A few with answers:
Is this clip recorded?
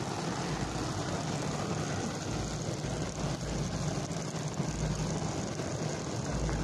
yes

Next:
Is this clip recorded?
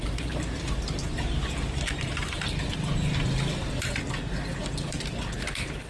yes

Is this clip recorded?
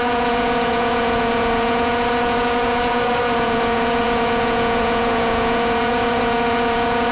no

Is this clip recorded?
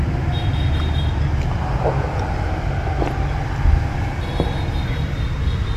yes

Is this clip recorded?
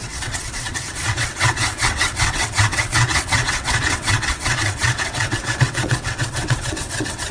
no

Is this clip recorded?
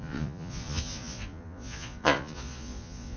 no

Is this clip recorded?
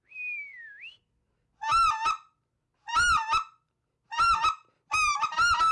yes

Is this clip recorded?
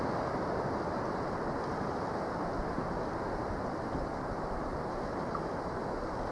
yes